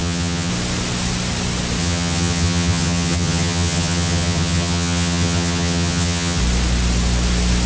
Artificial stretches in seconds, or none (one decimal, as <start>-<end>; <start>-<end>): 0.0-0.5; 1.8-6.4